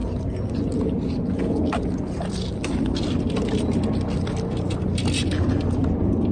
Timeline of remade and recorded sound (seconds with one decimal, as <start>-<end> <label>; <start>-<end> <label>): 0.0-6.3 recorded